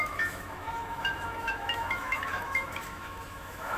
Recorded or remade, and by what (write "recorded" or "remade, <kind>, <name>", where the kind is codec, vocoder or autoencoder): remade, autoencoder, DAC-VAE